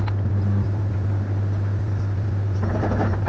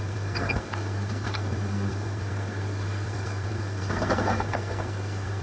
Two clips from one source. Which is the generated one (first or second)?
second